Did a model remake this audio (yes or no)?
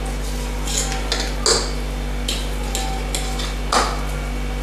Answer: no